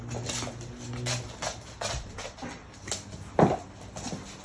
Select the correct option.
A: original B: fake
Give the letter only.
A